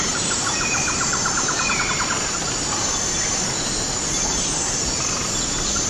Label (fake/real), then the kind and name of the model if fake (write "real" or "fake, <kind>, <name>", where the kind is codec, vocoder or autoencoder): fake, vocoder, BigVGAN v2